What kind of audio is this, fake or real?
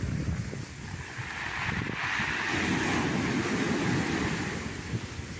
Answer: real